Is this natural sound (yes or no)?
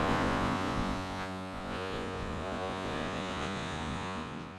no